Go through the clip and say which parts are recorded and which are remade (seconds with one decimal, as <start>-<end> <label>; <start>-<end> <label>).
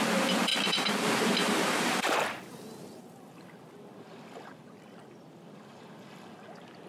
0.0-0.5 recorded; 0.5-3.0 remade; 3.0-6.9 recorded